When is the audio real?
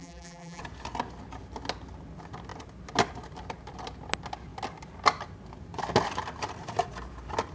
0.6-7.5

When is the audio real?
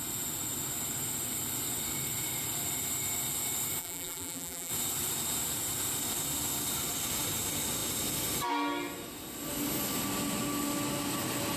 0.0-3.8; 4.7-11.6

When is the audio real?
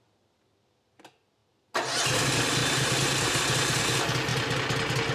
0.0-2.6; 3.3-5.1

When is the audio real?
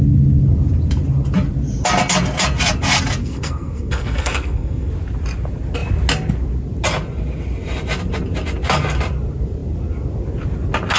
0.0-3.2; 4.9-11.0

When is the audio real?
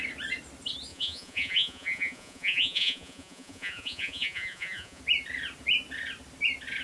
0.0-0.9; 5.0-6.8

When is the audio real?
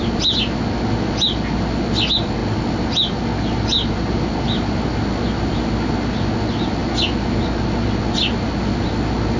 0.0-9.4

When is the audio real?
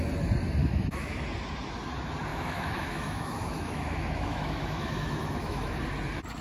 0.0-0.6; 1.1-2.3; 5.8-6.4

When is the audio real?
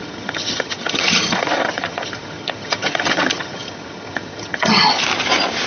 5.0-5.7